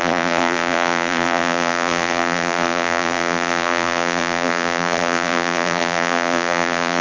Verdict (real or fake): fake